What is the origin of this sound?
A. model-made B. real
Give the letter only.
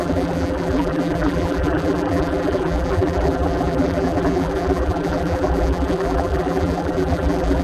A